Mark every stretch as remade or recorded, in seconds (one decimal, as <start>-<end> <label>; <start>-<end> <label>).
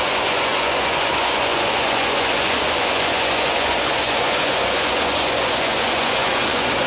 0.0-6.9 remade